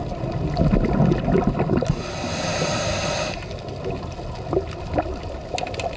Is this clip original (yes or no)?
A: yes